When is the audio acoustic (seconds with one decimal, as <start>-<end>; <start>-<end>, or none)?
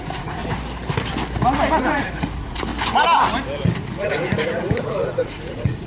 0.4-1.8; 2.7-4.0